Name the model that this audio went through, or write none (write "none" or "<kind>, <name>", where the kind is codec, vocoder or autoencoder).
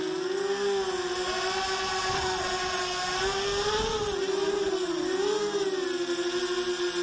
none